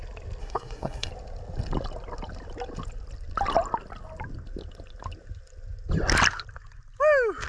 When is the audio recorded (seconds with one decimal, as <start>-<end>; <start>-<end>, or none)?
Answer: 0.0-0.4; 1.1-7.5

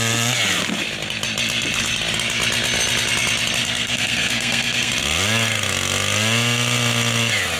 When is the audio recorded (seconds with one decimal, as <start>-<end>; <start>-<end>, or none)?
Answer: 0.0-3.6; 4.9-7.6

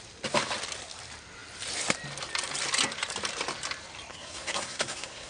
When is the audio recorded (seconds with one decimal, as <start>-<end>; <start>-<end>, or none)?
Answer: 0.0-4.1

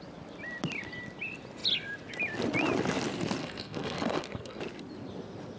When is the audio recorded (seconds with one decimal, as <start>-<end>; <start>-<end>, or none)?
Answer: 0.0-3.4; 4.6-5.6

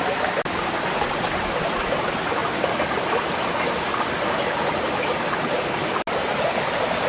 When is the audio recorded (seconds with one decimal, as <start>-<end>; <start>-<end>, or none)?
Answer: 0.0-7.1

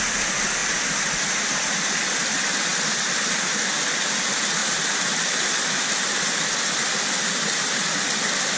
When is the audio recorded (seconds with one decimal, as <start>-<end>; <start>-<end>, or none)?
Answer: 0.0-8.6